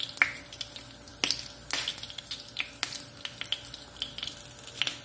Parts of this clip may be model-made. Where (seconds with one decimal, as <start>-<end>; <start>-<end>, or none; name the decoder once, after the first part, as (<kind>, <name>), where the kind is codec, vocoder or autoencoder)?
none